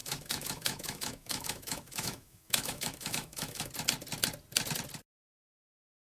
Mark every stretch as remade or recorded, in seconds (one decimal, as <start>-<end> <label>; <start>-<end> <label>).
0.0-3.7 remade; 3.7-6.1 recorded